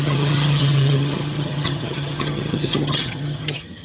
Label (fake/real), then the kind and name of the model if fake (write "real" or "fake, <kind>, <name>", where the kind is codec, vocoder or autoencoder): fake, vocoder, HiFi-GAN